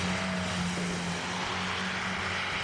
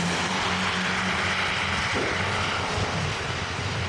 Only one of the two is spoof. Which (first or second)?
second